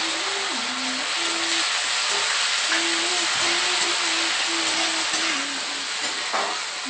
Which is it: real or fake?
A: real